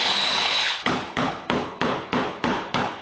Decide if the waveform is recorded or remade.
remade